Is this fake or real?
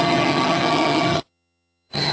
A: fake